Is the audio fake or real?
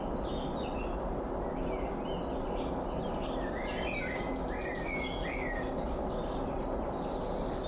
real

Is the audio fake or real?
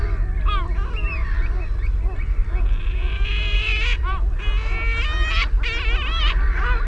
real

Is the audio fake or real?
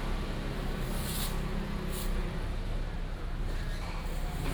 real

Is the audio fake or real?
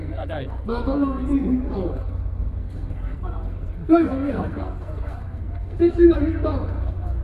fake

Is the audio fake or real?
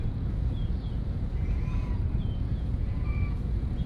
fake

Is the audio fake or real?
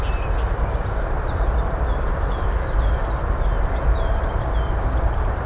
real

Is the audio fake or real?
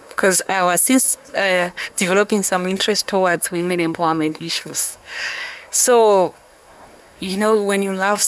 fake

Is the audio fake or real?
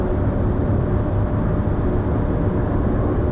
real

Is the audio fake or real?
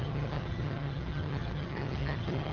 fake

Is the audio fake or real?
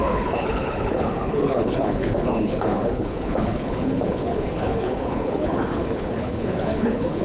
fake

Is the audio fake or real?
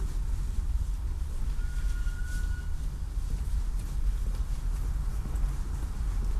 real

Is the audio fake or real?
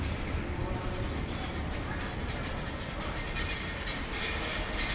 real